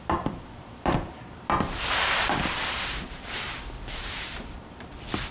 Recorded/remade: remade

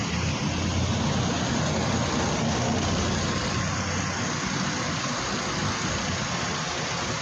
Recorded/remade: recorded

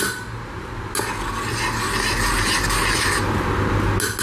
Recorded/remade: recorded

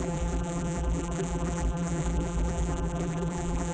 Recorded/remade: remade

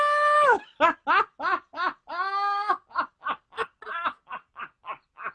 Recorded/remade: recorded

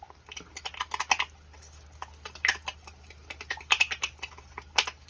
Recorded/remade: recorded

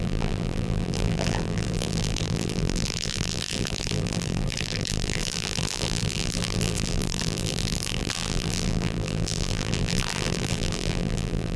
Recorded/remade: remade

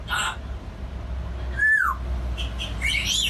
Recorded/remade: recorded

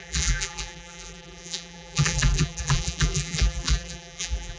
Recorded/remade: remade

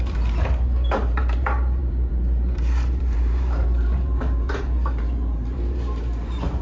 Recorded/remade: remade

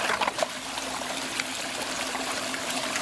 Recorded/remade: recorded